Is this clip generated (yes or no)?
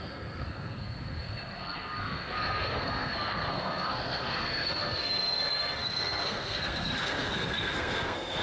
yes